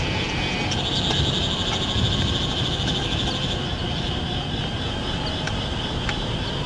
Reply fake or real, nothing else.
real